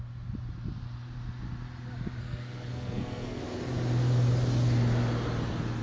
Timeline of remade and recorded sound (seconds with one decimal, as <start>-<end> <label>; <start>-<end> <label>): 0.0-2.2 recorded; 2.2-3.4 remade; 3.4-5.8 recorded